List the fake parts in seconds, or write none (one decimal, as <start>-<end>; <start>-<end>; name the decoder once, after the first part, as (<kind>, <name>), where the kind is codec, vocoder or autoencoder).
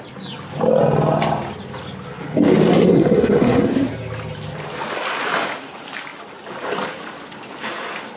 2.7-3.9 (codec, SNAC)